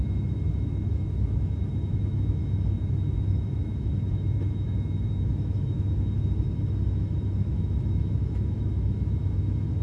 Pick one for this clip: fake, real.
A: fake